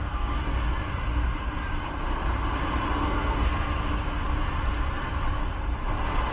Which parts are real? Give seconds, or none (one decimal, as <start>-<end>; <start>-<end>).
0.5-2.9; 3.8-6.3